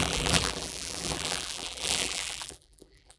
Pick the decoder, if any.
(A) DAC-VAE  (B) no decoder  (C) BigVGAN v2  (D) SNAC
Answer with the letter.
C